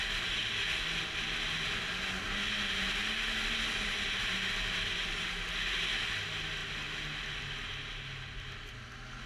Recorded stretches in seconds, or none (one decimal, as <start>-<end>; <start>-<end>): 0.0-9.3